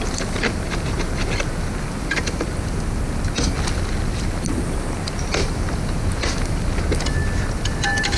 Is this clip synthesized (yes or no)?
no